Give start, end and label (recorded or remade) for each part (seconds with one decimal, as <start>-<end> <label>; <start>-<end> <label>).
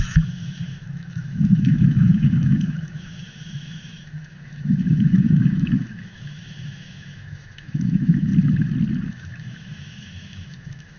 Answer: 0.0-8.3 remade; 8.3-9.1 recorded; 9.1-11.0 remade